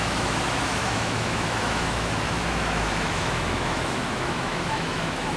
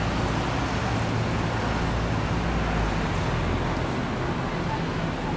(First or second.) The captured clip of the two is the second